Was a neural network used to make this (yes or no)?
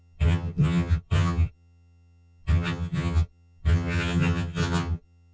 yes